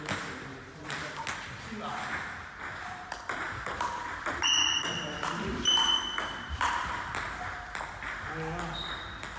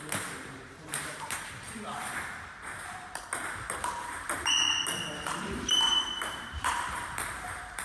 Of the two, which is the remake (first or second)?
second